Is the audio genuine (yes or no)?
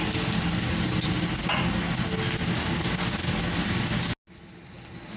yes